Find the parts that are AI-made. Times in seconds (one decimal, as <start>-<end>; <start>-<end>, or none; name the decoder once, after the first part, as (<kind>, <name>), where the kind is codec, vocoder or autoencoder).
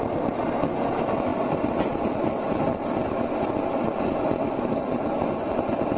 none